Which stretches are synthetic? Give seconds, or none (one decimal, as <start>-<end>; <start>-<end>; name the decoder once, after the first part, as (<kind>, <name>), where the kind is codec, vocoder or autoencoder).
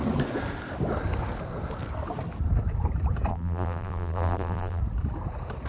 3.3-4.8 (vocoder, BigVGAN v2)